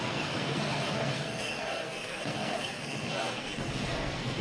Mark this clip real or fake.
fake